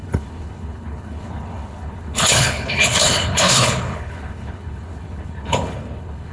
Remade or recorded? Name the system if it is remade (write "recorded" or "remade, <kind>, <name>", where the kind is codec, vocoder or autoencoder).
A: remade, codec, HILCodec